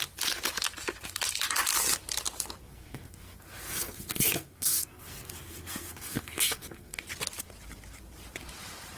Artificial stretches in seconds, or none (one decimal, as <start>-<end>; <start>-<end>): 2.6-7.0